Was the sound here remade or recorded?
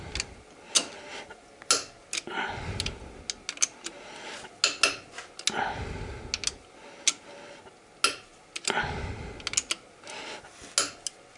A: recorded